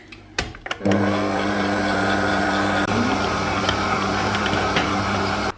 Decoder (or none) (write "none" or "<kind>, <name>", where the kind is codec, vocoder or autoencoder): vocoder, BigVGAN v2